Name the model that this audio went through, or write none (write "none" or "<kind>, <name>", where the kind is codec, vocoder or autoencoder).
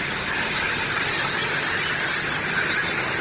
none